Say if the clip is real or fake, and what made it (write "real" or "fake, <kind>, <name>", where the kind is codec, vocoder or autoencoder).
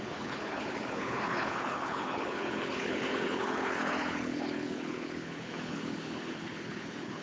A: fake, codec, HILCodec